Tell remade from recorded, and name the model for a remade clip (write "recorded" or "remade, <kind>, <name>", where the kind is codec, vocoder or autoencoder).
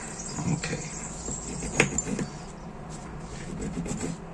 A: recorded